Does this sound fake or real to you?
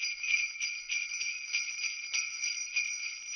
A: real